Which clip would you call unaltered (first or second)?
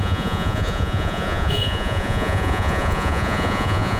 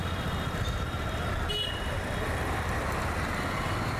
second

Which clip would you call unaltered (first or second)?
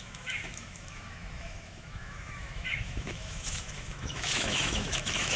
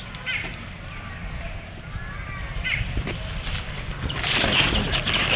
second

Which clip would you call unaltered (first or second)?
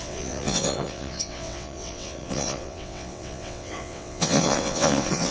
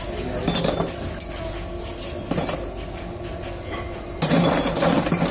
second